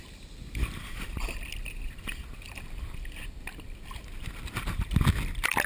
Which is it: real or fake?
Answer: fake